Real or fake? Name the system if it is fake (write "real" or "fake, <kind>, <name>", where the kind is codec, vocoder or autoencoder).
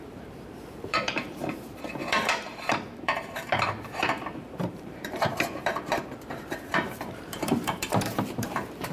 fake, vocoder, BigVGAN v2